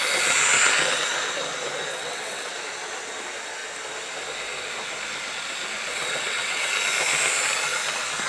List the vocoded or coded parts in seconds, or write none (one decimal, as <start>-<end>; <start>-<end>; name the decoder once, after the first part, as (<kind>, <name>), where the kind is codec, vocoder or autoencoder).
1.9-2.5 (vocoder, WaveNeXt); 5.9-6.7